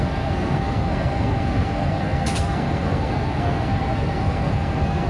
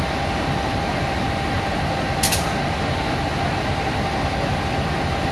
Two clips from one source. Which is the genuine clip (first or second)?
second